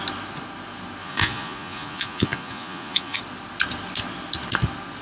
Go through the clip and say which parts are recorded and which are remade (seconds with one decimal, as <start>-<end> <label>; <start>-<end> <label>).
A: 0.0-1.0 recorded; 1.0-3.2 remade; 3.2-5.0 recorded